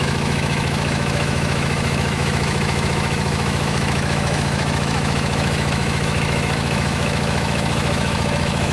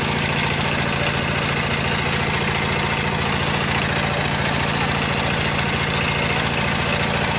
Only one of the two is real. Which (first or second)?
second